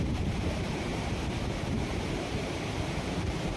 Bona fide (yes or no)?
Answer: no